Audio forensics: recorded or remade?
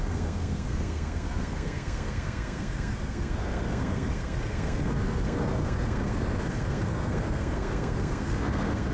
remade